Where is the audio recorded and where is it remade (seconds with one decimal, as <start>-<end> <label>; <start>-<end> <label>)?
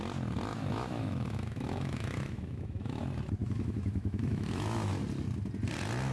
0.0-0.5 recorded; 0.5-3.0 remade; 3.0-3.4 recorded; 3.4-4.9 remade; 4.9-6.1 recorded